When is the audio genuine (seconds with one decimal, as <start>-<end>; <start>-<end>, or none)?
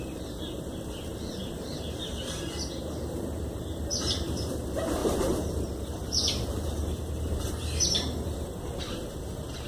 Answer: none